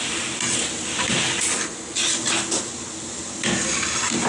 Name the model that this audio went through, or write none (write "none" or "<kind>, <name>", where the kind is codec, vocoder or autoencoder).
none